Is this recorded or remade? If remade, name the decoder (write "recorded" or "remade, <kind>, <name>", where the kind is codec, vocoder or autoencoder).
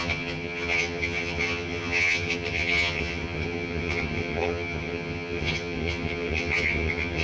remade, vocoder, HiFi-GAN